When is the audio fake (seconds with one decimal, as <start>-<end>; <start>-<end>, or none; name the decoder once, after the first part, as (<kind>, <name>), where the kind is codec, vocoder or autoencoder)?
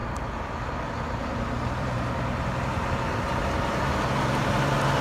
1.3-4.0 (vocoder, BigVGAN v2)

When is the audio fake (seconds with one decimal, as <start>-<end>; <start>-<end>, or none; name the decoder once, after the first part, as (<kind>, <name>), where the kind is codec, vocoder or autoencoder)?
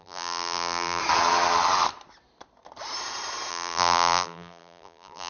0.0-1.0 (vocoder, BigVGAN v2); 3.5-5.3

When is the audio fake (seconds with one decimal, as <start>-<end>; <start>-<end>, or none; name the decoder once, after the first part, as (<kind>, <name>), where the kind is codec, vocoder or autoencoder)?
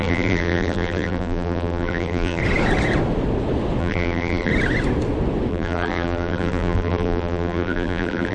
0.0-2.4 (vocoder, BigVGAN v2); 3.8-4.5; 5.5-8.3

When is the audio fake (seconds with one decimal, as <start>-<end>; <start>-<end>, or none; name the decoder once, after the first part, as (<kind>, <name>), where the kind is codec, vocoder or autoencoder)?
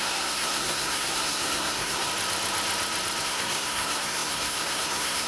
0.0-2.1 (codec, SNAC); 3.2-5.3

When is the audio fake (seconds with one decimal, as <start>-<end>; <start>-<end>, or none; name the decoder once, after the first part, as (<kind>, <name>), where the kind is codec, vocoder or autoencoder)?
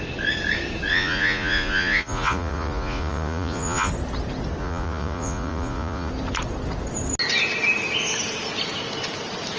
0.9-3.9 (vocoder, Vocos); 4.6-6.1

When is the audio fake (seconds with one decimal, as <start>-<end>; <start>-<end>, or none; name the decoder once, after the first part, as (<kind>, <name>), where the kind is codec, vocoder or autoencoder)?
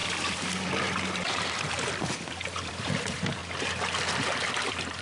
0.0-3.4 (vocoder, BigVGAN v2); 4.5-5.0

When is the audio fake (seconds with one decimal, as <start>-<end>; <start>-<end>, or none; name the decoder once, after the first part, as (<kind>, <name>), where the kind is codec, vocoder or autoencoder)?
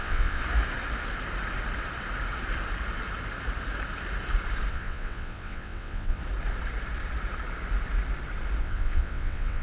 0.0-0.4 (vocoder, WaveNeXt); 4.7-6.2; 8.6-9.6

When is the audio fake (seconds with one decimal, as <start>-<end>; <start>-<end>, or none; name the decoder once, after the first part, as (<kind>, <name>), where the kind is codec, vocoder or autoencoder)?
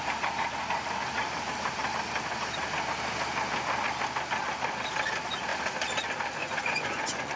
6.4-7.4 (vocoder, Vocos)